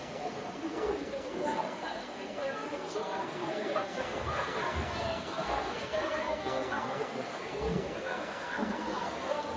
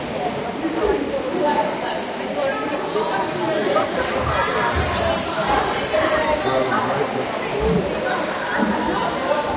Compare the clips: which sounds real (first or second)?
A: second